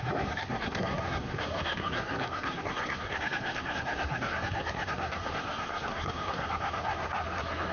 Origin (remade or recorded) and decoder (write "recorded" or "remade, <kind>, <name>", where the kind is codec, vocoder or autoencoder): remade, codec, SNAC